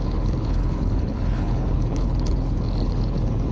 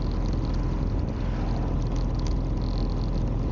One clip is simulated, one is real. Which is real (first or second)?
second